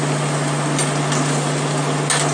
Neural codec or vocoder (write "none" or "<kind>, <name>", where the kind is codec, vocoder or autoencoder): none